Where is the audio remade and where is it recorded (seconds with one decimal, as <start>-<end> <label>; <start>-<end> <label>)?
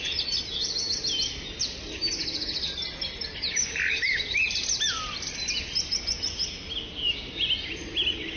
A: 0.0-8.4 recorded